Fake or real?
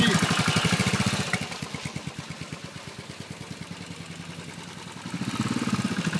real